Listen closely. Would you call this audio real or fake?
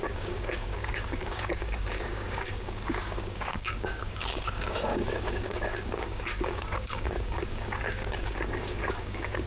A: fake